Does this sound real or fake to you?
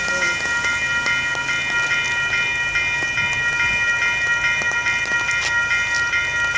real